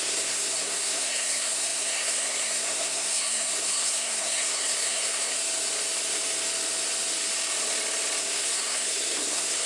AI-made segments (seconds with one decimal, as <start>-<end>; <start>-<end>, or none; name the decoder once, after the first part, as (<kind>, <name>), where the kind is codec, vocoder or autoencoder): 0.0-5.3 (codec, SNAC); 8.2-9.7